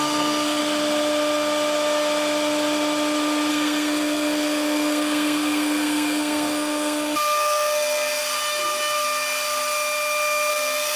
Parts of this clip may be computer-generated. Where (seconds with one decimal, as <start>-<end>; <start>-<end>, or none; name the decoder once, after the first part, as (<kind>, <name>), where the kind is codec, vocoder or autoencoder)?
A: 0.0-0.6 (codec, SNAC); 3.5-8.2; 10.5-11.0